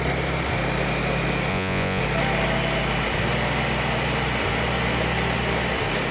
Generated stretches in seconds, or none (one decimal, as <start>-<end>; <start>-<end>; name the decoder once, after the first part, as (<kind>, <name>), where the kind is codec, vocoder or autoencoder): 1.5-2.0 (vocoder, Vocos)

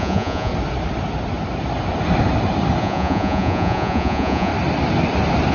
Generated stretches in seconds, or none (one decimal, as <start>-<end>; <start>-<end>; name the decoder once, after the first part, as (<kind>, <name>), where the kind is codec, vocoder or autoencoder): 0.0-0.5 (vocoder, Vocos); 2.8-4.5

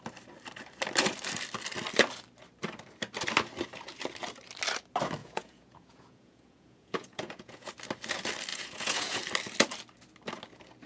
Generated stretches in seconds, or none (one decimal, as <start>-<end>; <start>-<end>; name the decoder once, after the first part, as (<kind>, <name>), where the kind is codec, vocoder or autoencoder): 5.2-7.7 (vocoder, Vocos); 8.5-9.2

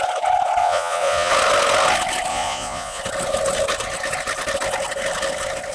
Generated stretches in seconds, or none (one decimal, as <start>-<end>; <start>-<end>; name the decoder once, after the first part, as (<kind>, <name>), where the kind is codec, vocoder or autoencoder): 0.6-1.3 (vocoder, Vocos); 2.3-3.0

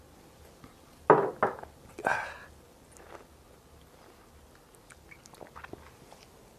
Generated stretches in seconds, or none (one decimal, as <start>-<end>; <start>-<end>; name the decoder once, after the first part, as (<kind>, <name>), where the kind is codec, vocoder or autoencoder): none

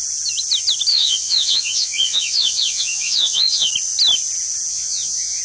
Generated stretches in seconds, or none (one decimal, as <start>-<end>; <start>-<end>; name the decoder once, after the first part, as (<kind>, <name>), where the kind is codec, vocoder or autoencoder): 0.9-3.7 (vocoder, Vocos); 4.7-5.4

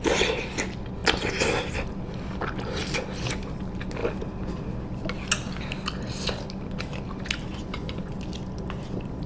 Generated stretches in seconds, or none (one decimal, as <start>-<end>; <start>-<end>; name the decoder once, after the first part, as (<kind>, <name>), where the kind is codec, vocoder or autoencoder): 7.5-8.1 (vocoder, Vocos)